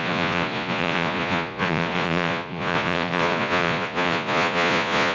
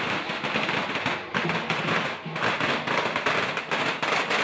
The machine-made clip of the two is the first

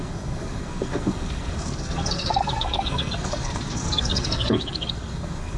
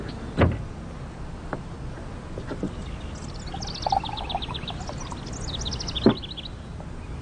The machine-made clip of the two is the first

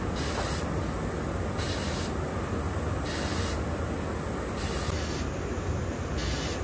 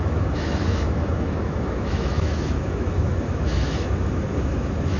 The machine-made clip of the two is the second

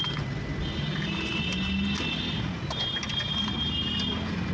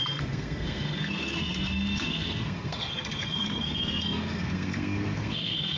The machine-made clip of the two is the second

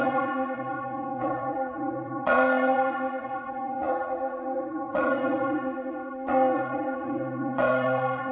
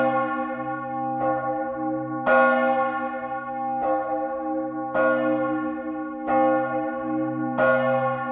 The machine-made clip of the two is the first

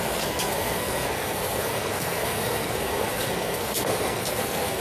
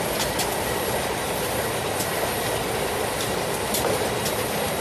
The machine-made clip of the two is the first